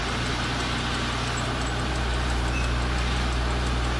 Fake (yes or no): no